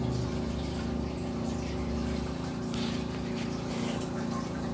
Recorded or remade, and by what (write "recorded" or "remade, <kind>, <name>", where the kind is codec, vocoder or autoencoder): recorded